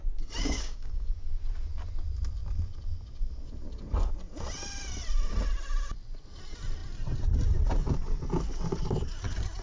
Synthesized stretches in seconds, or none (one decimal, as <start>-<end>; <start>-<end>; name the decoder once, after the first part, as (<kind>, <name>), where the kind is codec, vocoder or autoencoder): 0.4-1.1 (codec, DAC)